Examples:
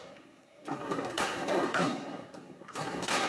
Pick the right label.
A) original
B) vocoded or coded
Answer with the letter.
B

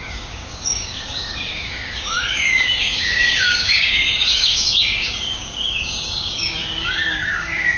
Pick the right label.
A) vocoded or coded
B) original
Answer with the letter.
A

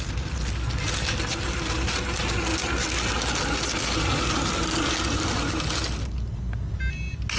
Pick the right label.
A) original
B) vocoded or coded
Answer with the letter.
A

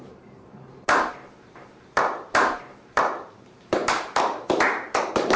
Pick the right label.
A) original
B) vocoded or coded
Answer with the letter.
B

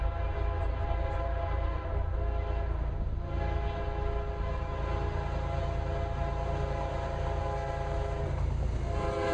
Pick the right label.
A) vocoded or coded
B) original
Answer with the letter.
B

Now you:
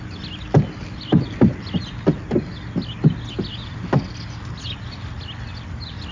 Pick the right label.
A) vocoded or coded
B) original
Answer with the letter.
B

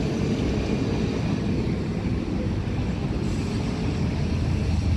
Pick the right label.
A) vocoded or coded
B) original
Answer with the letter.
B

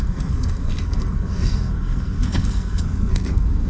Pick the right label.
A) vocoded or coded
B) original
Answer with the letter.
A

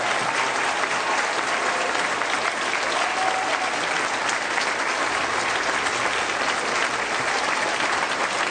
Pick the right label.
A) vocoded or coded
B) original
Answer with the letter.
B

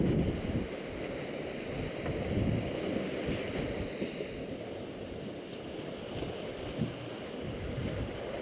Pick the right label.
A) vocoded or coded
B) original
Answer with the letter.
B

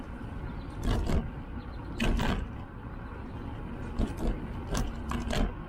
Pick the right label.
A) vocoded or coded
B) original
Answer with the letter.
B